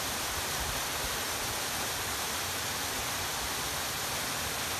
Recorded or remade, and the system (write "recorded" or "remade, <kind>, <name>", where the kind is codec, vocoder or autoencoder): recorded